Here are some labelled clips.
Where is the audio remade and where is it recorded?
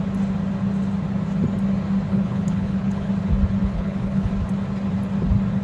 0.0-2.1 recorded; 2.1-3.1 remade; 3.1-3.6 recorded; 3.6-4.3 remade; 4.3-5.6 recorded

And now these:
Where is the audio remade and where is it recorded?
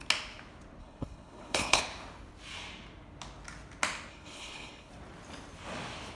0.0-0.8 recorded; 0.8-1.8 remade; 1.8-4.1 recorded; 4.1-4.9 remade; 4.9-6.2 recorded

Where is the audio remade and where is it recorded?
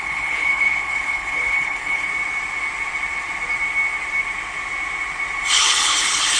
0.0-2.1 remade; 2.1-5.5 recorded; 5.5-6.4 remade